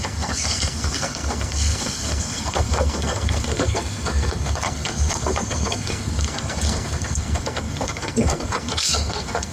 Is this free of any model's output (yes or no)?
no